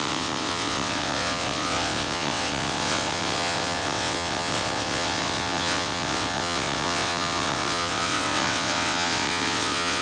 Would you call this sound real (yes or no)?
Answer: no